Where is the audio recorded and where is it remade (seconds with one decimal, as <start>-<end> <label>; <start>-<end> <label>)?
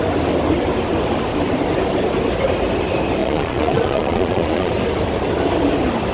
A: 0.0-3.2 recorded; 3.2-4.7 remade; 4.7-6.1 recorded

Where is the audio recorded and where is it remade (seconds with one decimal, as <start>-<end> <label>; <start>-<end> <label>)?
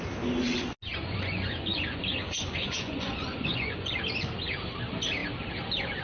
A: 0.0-0.9 recorded; 0.9-3.9 remade; 3.9-6.0 recorded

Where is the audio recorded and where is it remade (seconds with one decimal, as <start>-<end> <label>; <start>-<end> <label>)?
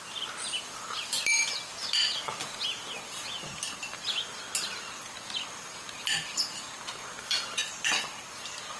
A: 0.0-8.8 recorded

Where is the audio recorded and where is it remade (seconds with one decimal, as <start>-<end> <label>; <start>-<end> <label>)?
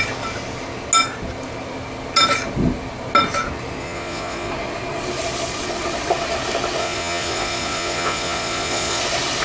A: 0.0-3.8 recorded; 3.8-4.5 remade; 4.5-6.8 recorded; 6.8-9.0 remade; 9.0-9.4 recorded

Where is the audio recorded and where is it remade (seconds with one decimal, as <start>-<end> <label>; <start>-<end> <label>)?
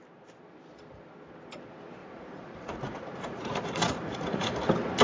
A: 0.0-2.0 recorded; 2.0-4.5 remade; 4.5-5.0 recorded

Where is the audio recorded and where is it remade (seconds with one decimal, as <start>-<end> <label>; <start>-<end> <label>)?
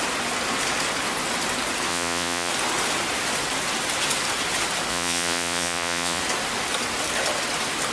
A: 0.0-1.9 recorded; 1.9-2.5 remade; 2.5-4.9 recorded; 4.9-6.2 remade; 6.2-7.9 recorded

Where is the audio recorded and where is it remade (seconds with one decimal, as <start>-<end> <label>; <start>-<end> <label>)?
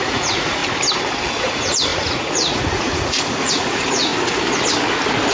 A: 0.0-0.6 remade; 0.6-1.4 recorded; 1.4-4.1 remade; 4.1-5.3 recorded